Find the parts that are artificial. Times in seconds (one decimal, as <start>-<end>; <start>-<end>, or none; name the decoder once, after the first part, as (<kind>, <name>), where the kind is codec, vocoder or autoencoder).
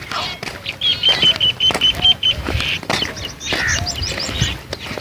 none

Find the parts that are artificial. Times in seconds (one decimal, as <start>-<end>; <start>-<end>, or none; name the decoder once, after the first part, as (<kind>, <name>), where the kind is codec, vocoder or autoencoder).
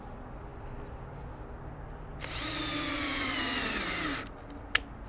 none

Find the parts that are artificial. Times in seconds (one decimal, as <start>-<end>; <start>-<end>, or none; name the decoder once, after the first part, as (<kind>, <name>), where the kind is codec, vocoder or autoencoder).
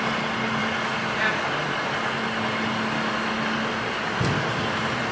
none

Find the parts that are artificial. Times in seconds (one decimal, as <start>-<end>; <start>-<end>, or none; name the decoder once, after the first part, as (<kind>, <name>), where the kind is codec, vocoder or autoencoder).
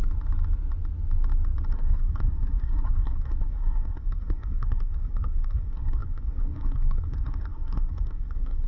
1.7-8.7 (codec, SNAC)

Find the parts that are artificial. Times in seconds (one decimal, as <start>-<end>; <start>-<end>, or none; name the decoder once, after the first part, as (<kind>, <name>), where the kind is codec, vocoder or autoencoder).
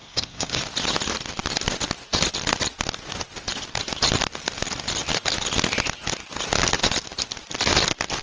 0.0-0.6 (codec, SNAC)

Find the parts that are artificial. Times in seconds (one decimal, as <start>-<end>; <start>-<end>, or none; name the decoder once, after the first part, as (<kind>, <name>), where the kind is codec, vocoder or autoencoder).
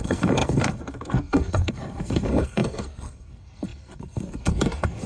0.0-5.1 (codec, SNAC)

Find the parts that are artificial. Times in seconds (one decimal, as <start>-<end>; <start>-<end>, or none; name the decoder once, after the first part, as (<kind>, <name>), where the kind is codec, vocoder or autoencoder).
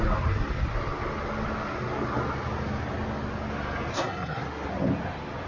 3.9-4.7 (codec, SNAC)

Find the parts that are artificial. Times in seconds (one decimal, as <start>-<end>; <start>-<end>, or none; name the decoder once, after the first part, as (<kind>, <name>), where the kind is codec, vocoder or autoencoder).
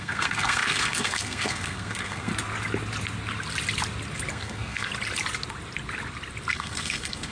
0.0-2.3 (codec, SNAC); 4.3-4.9; 6.5-7.3